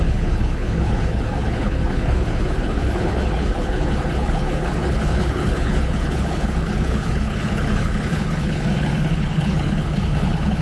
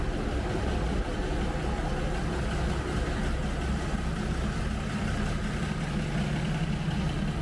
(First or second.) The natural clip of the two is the second